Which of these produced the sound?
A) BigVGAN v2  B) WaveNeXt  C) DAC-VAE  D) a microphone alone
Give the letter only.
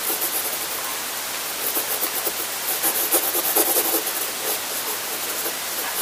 D